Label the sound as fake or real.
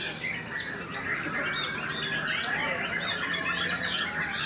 real